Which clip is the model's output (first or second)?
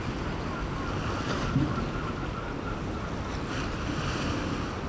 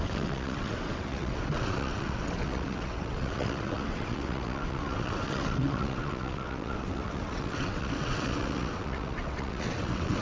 second